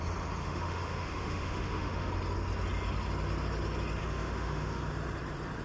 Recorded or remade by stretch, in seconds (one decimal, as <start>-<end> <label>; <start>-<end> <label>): 0.0-0.4 recorded; 0.4-2.1 remade; 2.1-4.0 recorded; 4.0-4.8 remade; 4.8-5.6 recorded